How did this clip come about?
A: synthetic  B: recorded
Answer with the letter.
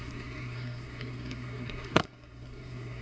A